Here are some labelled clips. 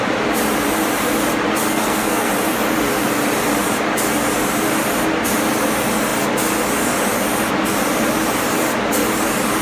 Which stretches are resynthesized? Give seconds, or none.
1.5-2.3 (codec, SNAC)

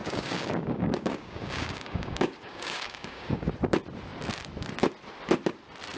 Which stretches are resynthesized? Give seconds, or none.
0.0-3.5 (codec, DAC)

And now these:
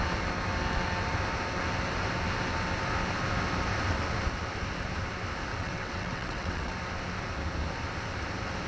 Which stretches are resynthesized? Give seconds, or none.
5.5-6.7 (vocoder, WaveNeXt)